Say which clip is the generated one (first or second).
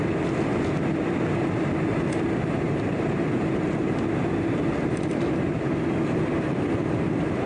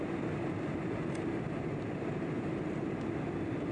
second